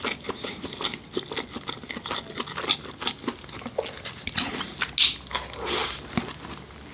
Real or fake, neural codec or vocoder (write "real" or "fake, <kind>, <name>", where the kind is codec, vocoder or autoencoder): real